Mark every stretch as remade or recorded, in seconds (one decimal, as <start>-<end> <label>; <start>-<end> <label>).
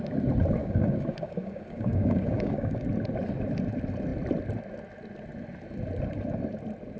0.0-0.6 recorded; 0.6-2.8 remade; 2.8-7.0 recorded